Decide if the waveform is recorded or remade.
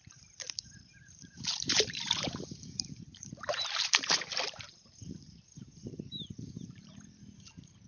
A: remade